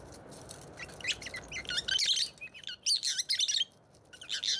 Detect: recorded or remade recorded